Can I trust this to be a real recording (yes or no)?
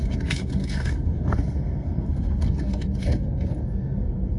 no